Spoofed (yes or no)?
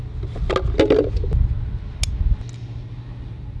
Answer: no